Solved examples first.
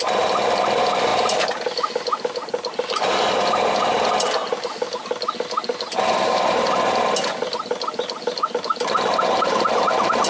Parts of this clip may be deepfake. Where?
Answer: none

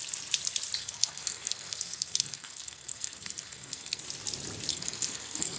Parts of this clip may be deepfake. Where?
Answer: 0.8-4.0; 4.7-5.6

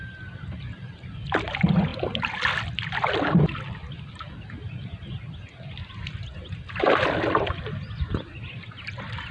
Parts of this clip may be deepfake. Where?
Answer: 0.0-1.9; 2.7-9.3

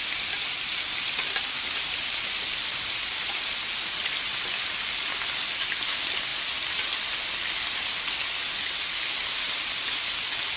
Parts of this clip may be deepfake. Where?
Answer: none

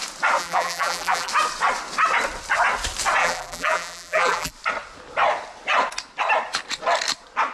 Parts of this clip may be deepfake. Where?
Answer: 0.4-1.3; 3.2-4.5